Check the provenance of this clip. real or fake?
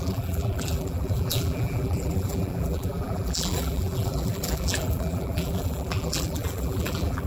fake